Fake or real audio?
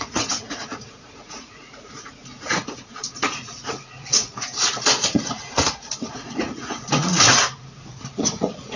fake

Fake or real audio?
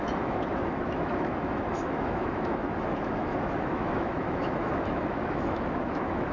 fake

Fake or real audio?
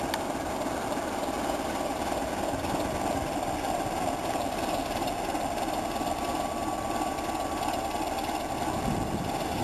real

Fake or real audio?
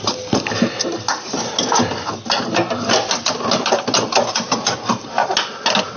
real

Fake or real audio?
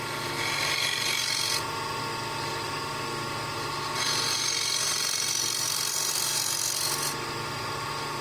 real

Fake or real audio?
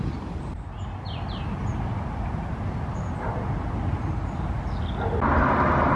real